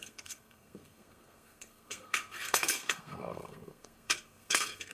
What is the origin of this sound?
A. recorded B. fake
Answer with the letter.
B